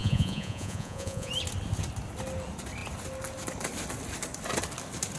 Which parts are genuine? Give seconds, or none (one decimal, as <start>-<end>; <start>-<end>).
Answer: 1.3-5.2